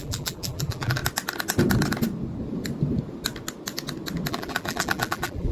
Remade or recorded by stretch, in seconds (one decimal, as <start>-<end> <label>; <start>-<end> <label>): 0.0-1.0 remade; 1.0-4.3 recorded; 4.3-5.5 remade